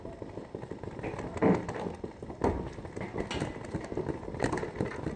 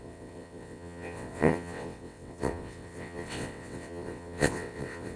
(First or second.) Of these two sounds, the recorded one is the first